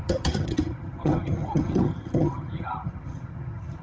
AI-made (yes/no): yes